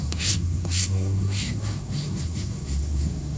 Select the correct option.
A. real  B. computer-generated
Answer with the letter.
B